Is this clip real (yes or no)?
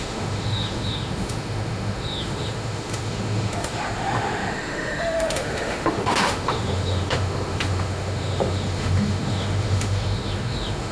no